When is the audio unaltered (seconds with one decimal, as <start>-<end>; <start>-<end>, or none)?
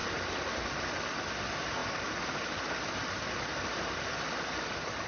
0.0-5.1